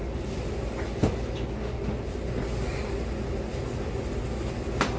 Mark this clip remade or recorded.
recorded